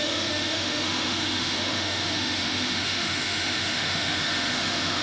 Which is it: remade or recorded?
remade